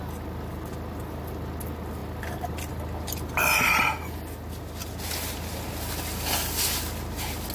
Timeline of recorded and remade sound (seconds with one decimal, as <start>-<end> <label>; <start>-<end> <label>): 0.0-7.5 recorded